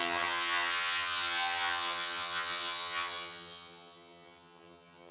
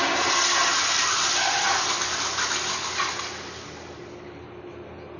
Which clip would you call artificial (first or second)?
first